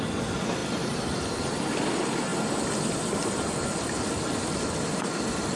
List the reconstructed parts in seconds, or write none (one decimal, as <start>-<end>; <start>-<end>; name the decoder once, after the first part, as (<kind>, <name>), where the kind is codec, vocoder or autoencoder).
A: none